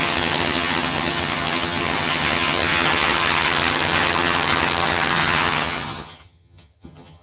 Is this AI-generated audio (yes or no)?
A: yes